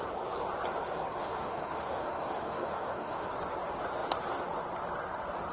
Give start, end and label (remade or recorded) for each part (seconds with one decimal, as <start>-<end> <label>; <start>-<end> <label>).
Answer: 0.0-1.2 recorded; 1.2-3.3 remade; 3.3-5.5 recorded